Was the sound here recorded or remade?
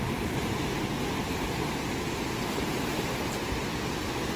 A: recorded